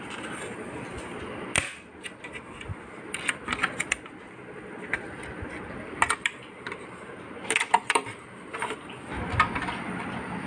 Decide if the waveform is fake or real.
real